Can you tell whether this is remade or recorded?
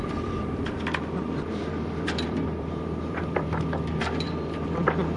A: remade